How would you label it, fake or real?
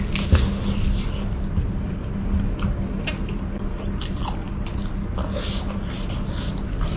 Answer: real